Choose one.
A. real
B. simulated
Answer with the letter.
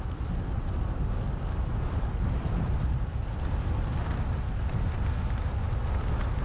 A